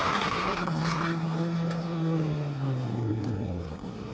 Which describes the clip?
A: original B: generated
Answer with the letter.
B